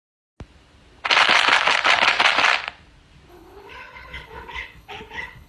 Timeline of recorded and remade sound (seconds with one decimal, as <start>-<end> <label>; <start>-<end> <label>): 0.0-3.3 recorded; 3.3-5.5 remade